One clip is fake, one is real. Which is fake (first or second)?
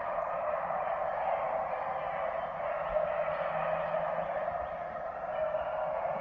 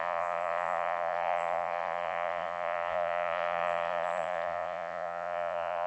second